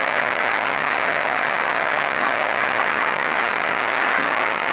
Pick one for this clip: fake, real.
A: fake